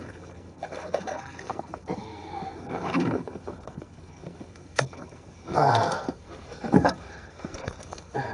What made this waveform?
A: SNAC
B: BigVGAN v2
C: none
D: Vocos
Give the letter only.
A